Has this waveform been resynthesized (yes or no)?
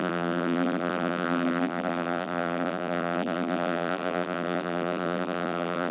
yes